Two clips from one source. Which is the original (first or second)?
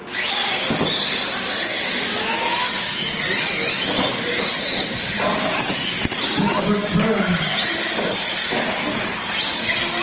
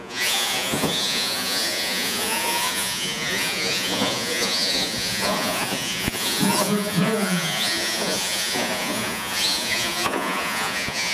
first